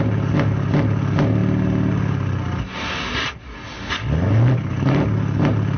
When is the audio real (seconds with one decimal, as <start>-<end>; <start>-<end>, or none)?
0.0-5.8